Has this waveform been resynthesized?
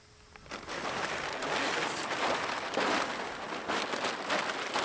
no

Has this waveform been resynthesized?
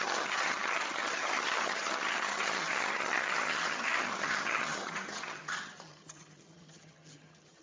yes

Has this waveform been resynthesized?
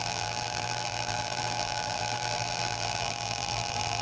yes